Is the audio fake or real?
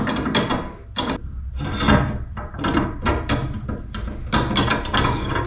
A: real